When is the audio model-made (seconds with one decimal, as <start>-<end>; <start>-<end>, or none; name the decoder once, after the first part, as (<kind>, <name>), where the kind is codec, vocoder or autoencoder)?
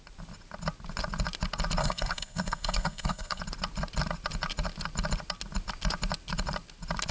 1.8-3.4 (codec, SNAC)